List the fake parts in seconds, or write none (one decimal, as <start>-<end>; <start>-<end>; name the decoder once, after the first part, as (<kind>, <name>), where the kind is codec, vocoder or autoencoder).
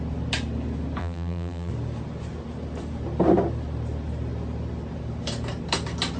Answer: 1.0-1.7 (vocoder, BigVGAN v2)